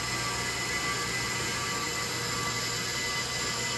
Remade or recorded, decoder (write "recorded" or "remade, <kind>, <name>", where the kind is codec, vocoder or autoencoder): recorded